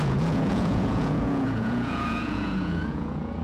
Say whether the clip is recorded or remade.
remade